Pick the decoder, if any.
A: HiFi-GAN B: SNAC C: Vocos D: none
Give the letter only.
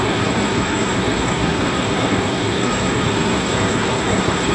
B